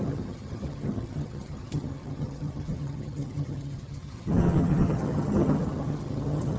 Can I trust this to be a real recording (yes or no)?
no